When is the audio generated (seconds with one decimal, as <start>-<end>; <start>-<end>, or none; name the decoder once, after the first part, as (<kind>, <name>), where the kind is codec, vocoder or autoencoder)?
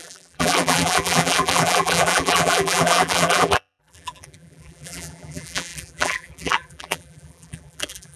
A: 0.0-8.2 (vocoder, BigVGAN v2)